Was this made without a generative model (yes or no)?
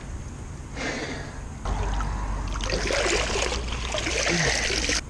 yes